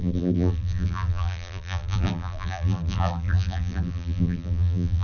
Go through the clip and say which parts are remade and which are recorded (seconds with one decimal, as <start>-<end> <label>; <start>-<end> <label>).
0.0-5.0 remade

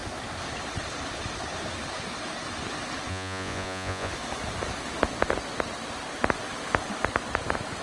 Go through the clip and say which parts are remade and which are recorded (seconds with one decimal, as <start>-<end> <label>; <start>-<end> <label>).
0.0-3.1 recorded; 3.1-4.1 remade; 4.1-7.8 recorded

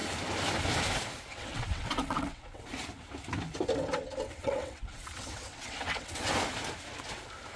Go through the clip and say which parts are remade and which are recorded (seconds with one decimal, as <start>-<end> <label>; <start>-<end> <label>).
0.0-1.3 recorded; 1.3-2.6 remade; 2.6-4.3 recorded; 4.3-6.3 remade; 6.3-7.6 recorded

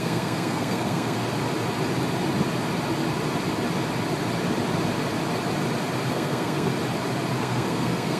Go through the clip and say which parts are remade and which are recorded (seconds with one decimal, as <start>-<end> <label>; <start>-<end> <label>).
0.0-1.2 remade; 1.2-6.1 recorded; 6.1-6.7 remade; 6.7-7.4 recorded; 7.4-8.2 remade

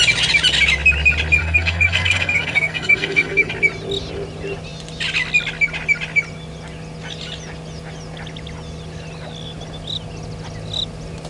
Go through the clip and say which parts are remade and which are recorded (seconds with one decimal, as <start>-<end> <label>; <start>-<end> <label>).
0.0-1.4 recorded; 1.4-3.5 remade; 3.5-11.3 recorded

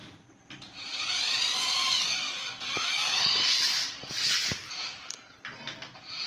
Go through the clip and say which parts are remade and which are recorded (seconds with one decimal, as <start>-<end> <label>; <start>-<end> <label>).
0.0-1.8 recorded; 1.8-3.3 remade; 3.3-3.8 recorded; 3.8-4.7 remade; 4.7-6.3 recorded

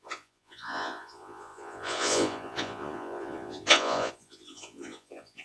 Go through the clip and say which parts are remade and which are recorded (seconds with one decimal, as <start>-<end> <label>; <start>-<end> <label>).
0.0-5.4 remade